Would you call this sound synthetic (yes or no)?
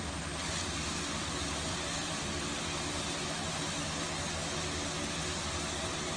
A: no